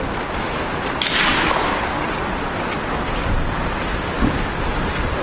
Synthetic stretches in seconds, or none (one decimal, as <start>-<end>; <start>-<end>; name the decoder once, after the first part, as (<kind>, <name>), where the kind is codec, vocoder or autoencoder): none